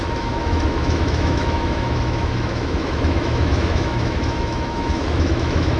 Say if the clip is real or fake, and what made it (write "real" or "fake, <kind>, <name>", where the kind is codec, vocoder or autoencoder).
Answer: fake, autoencoder, DAC-VAE